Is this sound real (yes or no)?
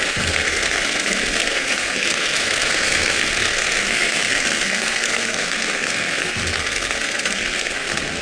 no